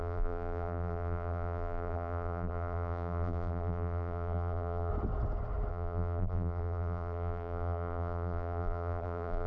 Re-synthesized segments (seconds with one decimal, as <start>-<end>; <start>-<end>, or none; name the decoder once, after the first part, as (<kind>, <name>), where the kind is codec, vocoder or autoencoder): 0.0-4.9 (vocoder, BigVGAN v2); 5.7-9.5